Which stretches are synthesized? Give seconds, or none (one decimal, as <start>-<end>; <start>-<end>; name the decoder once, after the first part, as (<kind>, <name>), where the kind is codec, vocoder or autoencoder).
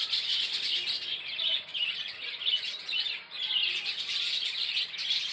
none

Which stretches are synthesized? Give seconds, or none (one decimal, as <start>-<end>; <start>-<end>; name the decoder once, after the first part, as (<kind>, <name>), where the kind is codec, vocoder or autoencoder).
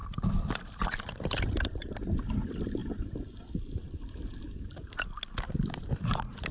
none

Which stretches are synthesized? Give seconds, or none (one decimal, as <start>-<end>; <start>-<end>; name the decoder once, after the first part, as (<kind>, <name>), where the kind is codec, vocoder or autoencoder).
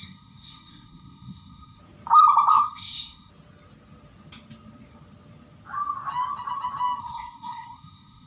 0.0-1.8 (codec, SNAC); 2.5-3.3; 7.0-8.3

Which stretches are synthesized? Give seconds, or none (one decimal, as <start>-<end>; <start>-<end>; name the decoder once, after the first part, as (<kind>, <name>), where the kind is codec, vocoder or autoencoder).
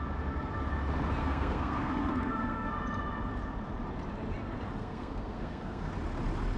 1.2-2.7 (codec, SNAC); 4.8-5.9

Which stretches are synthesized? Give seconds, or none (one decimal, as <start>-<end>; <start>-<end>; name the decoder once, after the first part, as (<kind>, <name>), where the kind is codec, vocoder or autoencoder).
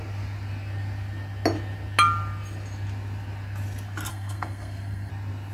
4.1-5.1 (codec, SNAC)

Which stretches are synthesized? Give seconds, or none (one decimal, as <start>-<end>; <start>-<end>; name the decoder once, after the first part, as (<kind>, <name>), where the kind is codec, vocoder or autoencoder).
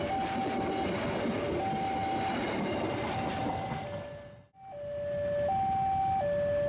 none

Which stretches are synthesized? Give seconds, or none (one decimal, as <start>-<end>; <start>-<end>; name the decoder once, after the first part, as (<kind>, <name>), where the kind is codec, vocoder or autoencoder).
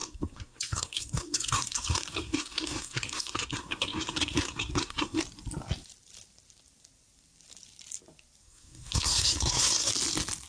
0.0-5.2 (codec, SNAC); 8.4-9.9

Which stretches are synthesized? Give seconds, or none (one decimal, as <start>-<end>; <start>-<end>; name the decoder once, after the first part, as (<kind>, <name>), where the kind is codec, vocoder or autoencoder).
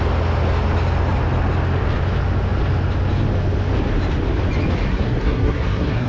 4.9-6.1 (codec, SNAC)